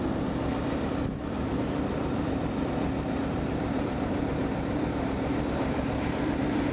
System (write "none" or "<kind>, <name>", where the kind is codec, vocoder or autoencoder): vocoder, BigVGAN v2